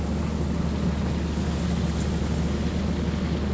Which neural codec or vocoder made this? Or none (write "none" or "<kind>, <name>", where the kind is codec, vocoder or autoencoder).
none